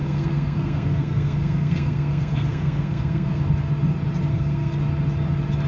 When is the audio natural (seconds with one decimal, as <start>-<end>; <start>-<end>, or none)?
3.4-4.3; 4.8-5.7